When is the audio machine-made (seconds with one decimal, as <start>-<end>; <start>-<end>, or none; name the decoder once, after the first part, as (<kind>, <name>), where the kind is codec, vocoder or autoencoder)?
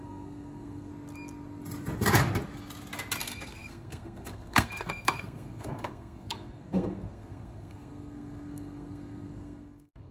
0.0-0.9 (codec, SNAC); 3.2-10.1